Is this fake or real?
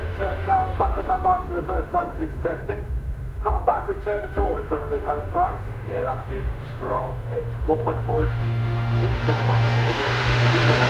fake